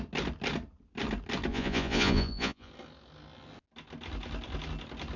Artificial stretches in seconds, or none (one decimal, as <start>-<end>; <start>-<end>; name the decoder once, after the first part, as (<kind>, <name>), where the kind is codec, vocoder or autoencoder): 1.5-2.7 (vocoder, Vocos)